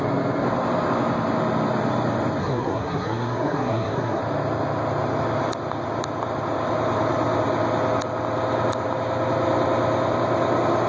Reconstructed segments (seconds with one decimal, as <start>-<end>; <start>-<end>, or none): 2.4-4.2